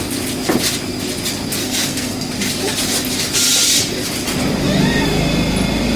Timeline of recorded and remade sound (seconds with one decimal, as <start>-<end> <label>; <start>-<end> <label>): 0.0-1.6 recorded; 1.6-2.3 remade; 2.3-6.0 recorded